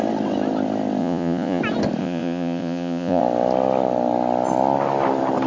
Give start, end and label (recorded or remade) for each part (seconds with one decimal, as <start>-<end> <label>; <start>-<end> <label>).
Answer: 0.0-1.0 recorded; 1.0-1.6 remade; 1.6-2.0 recorded; 2.0-3.2 remade; 3.2-5.5 recorded